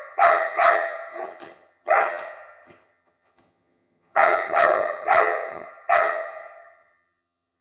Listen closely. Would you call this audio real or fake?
fake